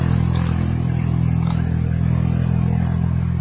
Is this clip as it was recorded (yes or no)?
yes